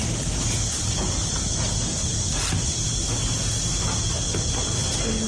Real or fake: real